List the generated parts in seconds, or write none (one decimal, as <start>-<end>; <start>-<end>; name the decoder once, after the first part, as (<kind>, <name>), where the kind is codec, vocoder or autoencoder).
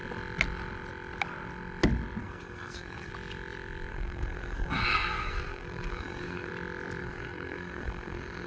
2.2-3.1 (codec, SNAC); 3.9-6.5; 7.0-8.5